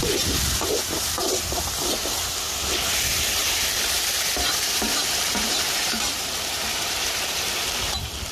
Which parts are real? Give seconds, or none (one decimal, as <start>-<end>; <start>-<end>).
0.0-3.4; 7.8-8.3